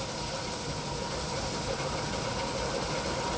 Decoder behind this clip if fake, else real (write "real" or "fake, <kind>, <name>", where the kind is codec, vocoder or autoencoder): real